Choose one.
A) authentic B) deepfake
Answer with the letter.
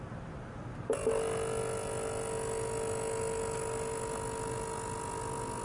A